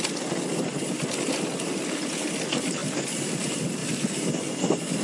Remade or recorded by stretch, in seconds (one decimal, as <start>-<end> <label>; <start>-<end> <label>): 0.0-5.0 recorded